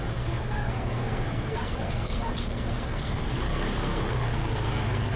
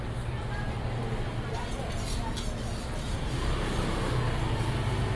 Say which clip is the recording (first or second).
second